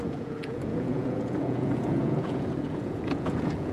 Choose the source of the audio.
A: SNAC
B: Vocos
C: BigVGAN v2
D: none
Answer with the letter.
B